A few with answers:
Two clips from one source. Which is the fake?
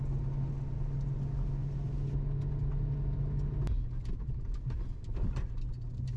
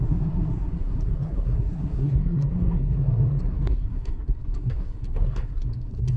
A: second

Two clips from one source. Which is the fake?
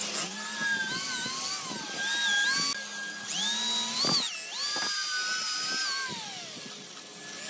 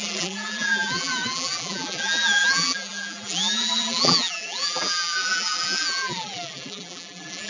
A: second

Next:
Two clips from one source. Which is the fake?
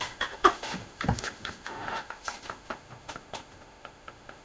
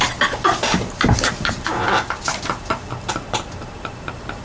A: first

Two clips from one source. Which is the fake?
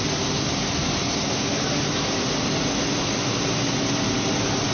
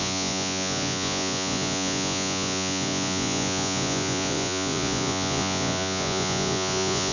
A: second